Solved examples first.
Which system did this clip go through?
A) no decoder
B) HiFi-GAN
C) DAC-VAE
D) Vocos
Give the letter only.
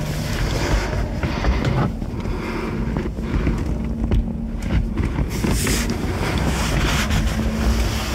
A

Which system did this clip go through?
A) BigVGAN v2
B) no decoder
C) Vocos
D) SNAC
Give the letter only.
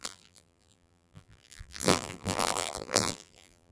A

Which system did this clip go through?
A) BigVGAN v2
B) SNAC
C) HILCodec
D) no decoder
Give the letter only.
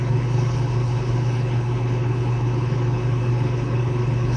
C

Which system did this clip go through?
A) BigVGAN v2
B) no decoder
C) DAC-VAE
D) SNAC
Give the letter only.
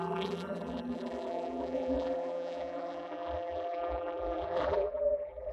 A